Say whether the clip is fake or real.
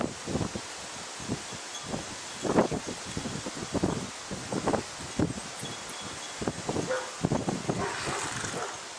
real